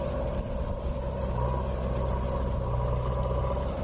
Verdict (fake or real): real